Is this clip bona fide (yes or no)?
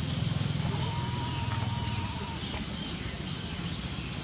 yes